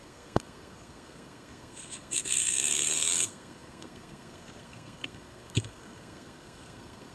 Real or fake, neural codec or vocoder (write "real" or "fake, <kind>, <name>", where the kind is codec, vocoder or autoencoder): fake, codec, SNAC